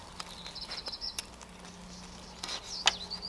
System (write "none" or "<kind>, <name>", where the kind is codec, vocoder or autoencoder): none